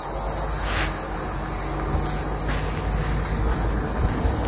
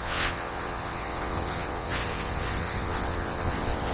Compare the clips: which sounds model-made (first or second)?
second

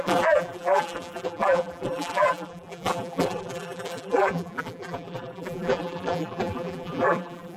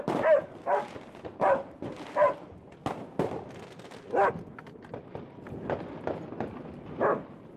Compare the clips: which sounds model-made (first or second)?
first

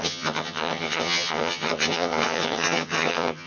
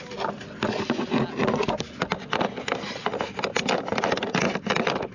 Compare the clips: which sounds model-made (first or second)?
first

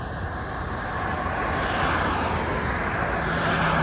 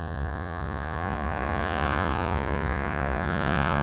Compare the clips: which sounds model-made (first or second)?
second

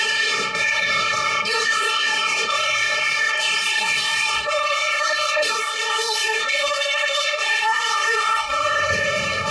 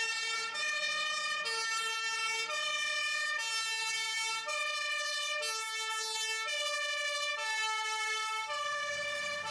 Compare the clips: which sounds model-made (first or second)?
first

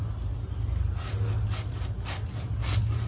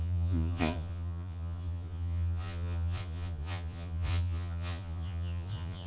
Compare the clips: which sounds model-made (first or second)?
second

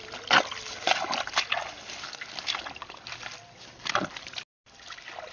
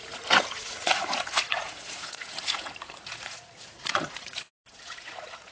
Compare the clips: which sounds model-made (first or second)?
second